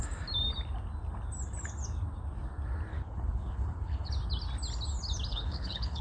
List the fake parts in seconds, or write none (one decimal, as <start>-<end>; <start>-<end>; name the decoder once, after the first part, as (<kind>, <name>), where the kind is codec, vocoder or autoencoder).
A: 2.9-4.1 (codec, HILCodec); 5.3-6.0